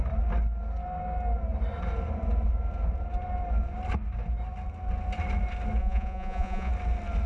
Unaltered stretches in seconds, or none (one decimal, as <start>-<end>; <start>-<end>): 0.0-5.8; 6.7-7.3